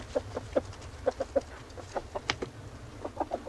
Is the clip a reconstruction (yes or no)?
no